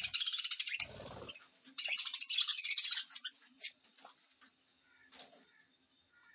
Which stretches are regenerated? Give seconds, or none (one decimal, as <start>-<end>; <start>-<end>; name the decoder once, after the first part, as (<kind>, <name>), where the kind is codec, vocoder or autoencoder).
2.5-4.0 (vocoder, Vocos)